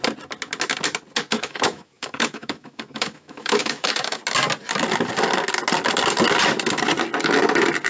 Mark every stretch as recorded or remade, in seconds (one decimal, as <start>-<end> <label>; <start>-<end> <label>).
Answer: 0.0-1.3 recorded; 1.3-4.2 remade; 4.2-7.9 recorded

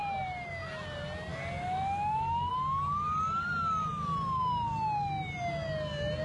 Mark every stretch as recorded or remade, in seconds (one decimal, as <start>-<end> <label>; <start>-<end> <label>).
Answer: 0.0-1.3 recorded; 1.3-2.5 remade; 2.5-6.2 recorded

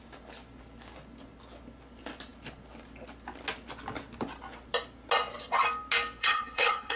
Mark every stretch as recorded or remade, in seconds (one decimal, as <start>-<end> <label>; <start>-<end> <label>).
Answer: 0.0-6.2 recorded; 6.2-7.0 remade